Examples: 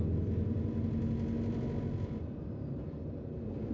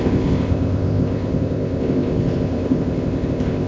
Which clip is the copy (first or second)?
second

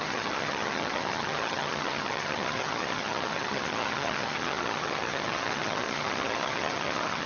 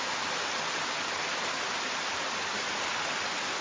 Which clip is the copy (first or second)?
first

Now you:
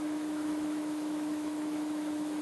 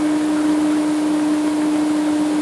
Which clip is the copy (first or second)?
first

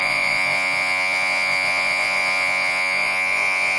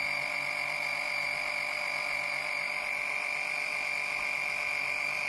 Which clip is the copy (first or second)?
first